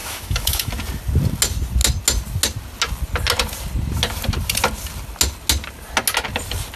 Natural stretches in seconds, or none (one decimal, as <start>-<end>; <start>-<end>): 0.7-6.8